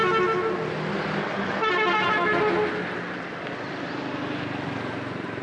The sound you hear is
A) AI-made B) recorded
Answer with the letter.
B